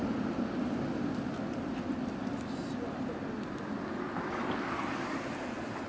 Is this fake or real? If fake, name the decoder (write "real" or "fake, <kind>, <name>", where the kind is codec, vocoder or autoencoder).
real